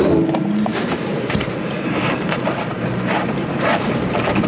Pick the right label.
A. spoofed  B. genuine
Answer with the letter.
A